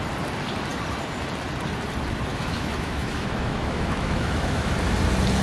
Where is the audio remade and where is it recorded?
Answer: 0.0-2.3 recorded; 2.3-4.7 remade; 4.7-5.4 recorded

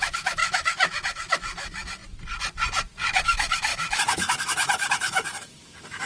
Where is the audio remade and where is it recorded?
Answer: 0.0-2.0 remade; 2.0-3.2 recorded; 3.2-6.1 remade

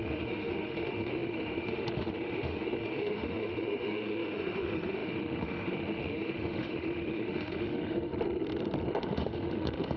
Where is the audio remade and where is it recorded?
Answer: 0.0-8.1 remade; 8.1-8.9 recorded; 8.9-10.0 remade

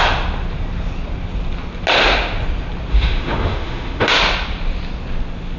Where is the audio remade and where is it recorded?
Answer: 0.0-2.9 recorded; 2.9-4.1 remade; 4.1-5.6 recorded